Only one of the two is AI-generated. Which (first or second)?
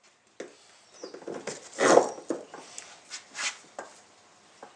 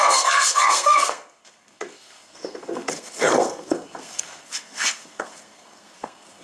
second